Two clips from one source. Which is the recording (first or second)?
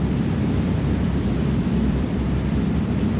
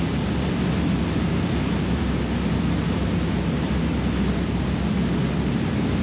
second